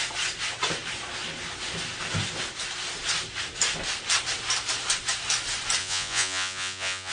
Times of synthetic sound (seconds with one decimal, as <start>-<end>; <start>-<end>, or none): 5.8-7.1